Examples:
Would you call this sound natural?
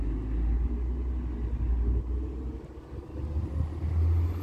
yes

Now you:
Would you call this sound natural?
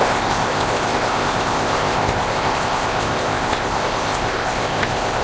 no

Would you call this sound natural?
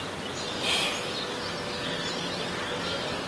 yes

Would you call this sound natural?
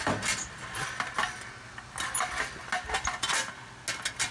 yes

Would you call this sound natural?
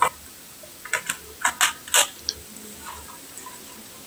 yes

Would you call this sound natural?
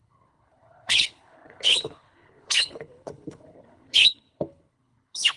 no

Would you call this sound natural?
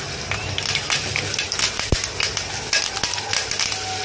yes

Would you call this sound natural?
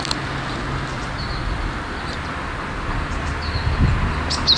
yes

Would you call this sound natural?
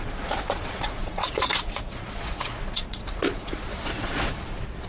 no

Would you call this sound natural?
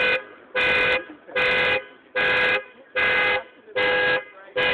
yes